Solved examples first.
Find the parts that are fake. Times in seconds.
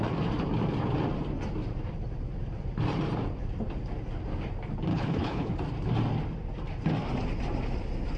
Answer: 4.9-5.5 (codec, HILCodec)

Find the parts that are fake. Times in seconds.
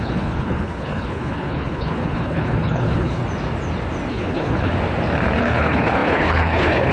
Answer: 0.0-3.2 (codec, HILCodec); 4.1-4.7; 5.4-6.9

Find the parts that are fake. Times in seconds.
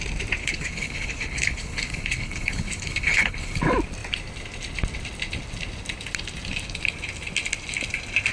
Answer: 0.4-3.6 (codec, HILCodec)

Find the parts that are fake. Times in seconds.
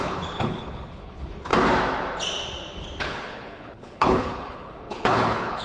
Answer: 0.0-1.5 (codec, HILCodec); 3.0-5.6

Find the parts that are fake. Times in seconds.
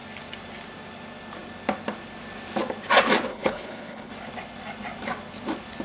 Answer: 3.3-4.1 (codec, HILCodec)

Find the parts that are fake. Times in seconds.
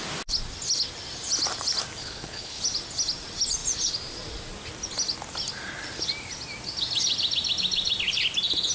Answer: 2.0-2.6 (codec, HILCodec)